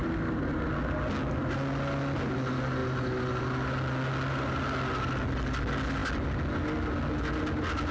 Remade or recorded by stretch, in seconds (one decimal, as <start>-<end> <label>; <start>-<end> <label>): 0.0-7.9 recorded